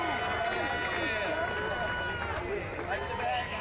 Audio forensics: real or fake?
real